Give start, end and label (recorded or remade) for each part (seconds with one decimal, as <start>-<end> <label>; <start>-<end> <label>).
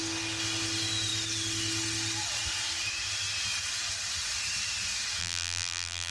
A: 0.0-5.2 recorded; 5.2-6.1 remade